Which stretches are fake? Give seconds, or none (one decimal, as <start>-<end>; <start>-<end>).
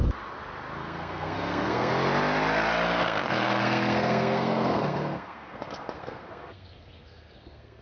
0.8-1.9; 3.0-7.8